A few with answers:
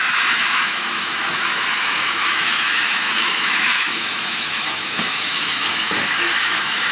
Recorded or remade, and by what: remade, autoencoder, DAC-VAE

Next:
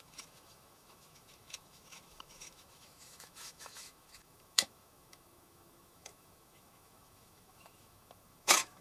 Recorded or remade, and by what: remade, autoencoder, DAC-VAE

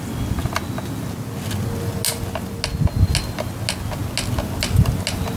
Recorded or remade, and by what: recorded